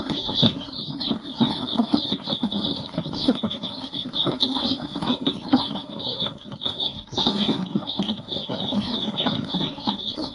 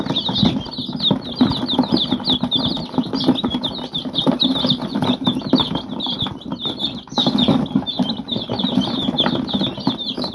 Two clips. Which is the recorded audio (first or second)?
second